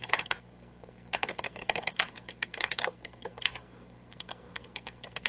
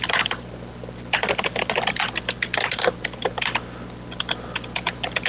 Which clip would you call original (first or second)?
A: second